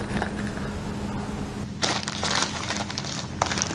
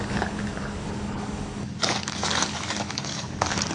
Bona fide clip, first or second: first